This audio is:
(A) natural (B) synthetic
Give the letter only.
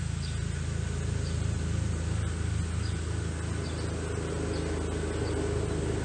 A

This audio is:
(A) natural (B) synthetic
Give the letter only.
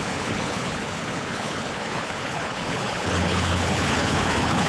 B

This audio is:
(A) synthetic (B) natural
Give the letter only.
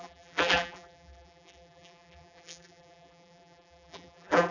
A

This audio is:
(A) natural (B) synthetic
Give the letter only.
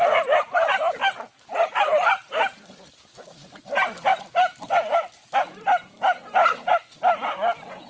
A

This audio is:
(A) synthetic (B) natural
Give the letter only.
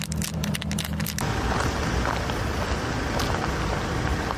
B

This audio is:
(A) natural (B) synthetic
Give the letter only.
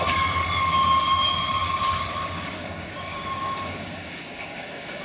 B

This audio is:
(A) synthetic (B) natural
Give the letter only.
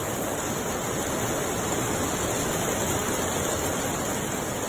B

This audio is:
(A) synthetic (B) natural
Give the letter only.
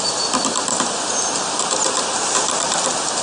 B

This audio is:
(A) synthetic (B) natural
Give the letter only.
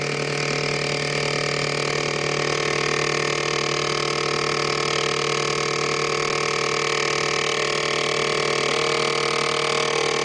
B